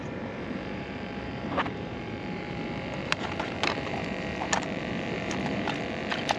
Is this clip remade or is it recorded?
remade